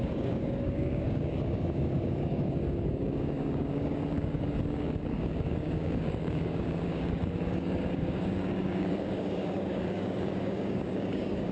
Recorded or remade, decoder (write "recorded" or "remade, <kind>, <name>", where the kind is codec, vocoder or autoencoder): remade, codec, DAC